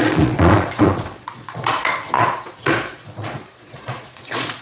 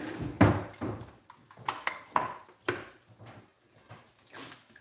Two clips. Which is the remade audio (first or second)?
first